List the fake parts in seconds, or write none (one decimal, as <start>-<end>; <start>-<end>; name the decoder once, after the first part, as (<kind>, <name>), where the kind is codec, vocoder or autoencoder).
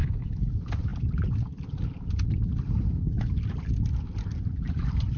0.0-0.5 (codec, HILCodec)